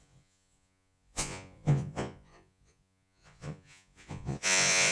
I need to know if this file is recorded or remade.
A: remade